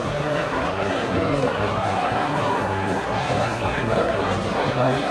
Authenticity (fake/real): fake